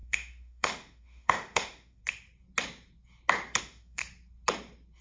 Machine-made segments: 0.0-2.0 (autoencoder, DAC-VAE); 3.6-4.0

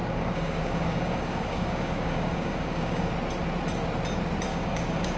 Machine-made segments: 0.0-3.1 (codec, DAC); 4.5-5.2

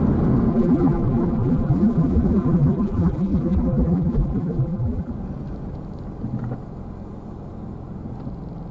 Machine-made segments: 0.5-5.1 (vocoder, BigVGAN v2)